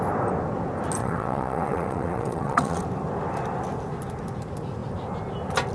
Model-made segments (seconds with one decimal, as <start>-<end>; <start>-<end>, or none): 1.0-2.8